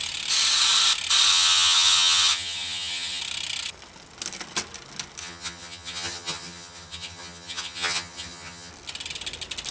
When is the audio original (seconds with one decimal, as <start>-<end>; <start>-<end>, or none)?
0.0-1.3; 3.2-5.2; 8.7-9.7